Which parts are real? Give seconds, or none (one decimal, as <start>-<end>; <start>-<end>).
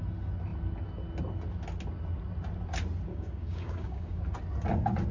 0.0-3.1; 4.2-5.1